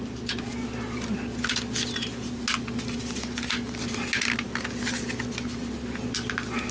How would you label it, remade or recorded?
recorded